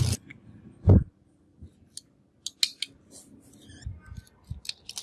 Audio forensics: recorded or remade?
recorded